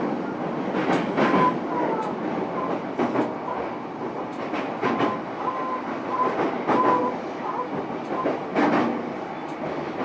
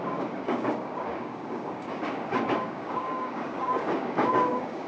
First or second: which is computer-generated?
second